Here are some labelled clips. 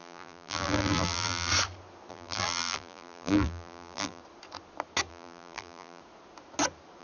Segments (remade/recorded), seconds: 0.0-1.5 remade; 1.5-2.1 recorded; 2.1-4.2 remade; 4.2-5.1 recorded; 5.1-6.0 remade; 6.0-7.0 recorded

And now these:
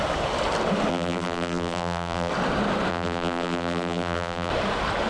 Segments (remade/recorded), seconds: 0.0-0.9 recorded; 0.9-2.3 remade; 2.3-2.9 recorded; 2.9-4.5 remade; 4.5-5.1 recorded